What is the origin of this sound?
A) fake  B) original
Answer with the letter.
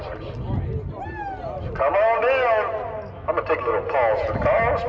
B